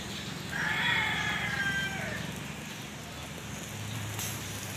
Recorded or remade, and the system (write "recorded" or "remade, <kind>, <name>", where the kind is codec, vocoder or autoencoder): recorded